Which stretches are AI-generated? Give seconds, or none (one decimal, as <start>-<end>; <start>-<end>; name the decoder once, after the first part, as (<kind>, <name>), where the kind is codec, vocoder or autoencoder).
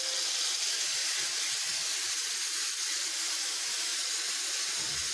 none